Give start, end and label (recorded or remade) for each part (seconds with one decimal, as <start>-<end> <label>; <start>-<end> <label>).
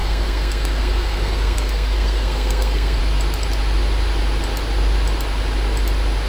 0.0-3.0 remade; 3.0-6.3 recorded